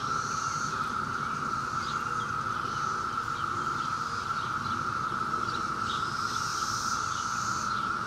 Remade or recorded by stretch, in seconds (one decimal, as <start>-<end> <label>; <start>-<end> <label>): 0.0-6.5 remade; 6.5-8.1 recorded